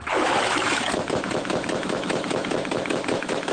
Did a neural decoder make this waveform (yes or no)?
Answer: yes